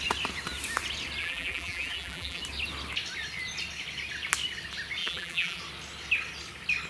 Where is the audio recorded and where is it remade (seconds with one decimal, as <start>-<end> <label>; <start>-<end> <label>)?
0.0-1.2 recorded; 1.2-2.4 remade; 2.4-5.0 recorded; 5.0-5.6 remade; 5.6-6.9 recorded